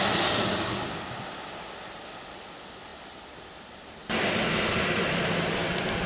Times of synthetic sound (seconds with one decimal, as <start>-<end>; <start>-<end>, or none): none